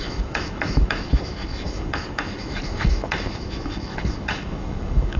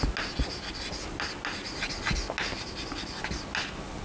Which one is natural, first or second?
second